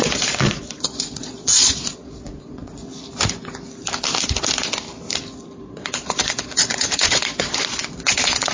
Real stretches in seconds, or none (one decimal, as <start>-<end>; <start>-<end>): 2.8-5.6